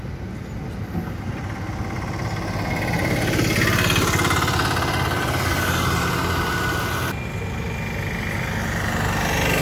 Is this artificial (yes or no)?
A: no